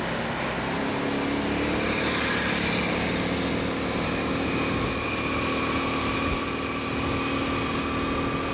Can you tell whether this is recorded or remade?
recorded